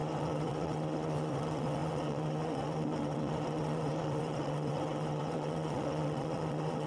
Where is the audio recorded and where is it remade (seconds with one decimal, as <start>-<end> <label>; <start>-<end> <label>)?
0.0-6.9 remade

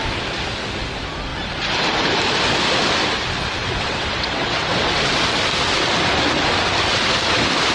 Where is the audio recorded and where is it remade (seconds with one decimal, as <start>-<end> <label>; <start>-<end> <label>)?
0.0-3.6 recorded; 3.6-5.0 remade; 5.0-7.7 recorded